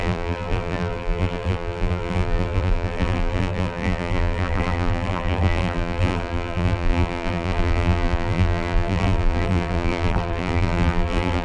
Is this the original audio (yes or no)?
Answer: no